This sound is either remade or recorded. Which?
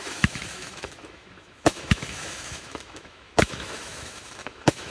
remade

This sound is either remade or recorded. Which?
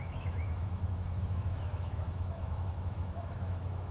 remade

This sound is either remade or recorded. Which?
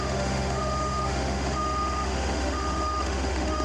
remade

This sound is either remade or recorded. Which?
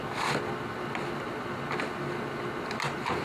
recorded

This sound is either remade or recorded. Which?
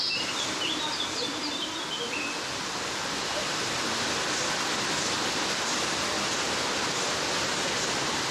recorded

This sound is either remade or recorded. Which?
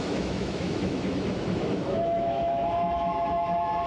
remade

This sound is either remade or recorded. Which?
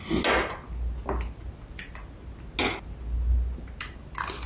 recorded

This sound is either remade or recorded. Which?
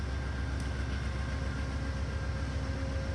recorded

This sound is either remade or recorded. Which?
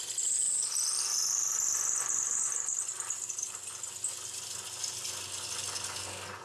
recorded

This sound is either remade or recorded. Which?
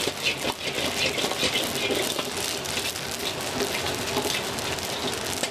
recorded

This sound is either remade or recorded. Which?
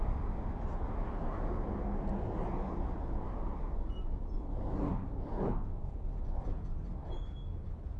recorded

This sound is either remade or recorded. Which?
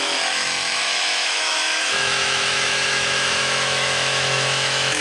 remade